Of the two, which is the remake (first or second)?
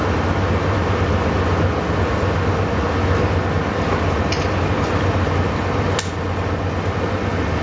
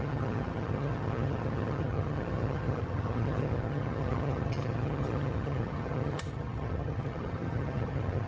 second